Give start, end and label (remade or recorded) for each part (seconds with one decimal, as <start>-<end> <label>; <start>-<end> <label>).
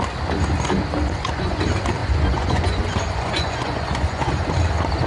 0.0-1.0 recorded; 1.0-1.6 remade; 1.6-2.0 recorded; 2.0-4.3 remade; 4.3-5.1 recorded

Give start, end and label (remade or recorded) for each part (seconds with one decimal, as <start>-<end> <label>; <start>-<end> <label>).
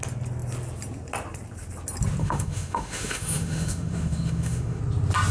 0.0-2.2 recorded; 2.2-4.8 remade; 4.8-5.3 recorded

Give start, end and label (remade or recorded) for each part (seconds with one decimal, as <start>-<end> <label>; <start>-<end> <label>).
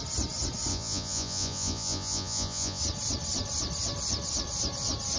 0.0-0.7 recorded; 0.7-2.8 remade; 2.8-5.2 recorded